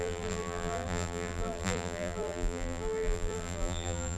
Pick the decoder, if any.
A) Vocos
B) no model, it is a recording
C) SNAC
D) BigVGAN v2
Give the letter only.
D